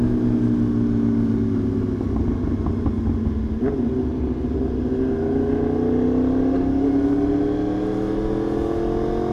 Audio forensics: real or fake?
real